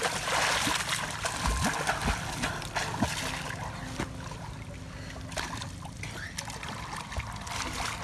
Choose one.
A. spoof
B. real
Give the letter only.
B